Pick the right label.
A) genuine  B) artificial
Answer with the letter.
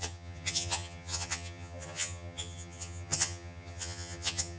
B